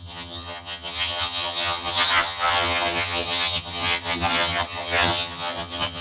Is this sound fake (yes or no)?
yes